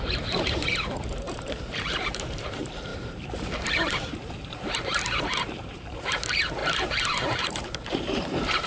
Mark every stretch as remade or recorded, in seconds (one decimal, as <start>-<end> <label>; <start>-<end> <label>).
0.0-8.7 remade